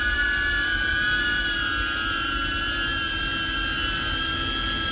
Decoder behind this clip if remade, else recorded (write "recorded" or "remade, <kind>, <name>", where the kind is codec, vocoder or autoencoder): recorded